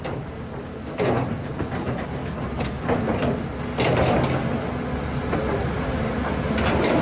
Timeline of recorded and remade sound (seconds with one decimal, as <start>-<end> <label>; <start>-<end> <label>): 0.0-7.0 recorded